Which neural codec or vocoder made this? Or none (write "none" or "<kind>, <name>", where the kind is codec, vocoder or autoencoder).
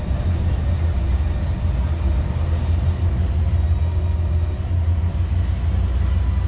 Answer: none